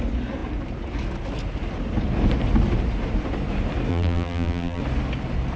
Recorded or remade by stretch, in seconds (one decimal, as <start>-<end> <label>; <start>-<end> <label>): 0.0-3.9 recorded; 3.9-4.8 remade; 4.8-5.6 recorded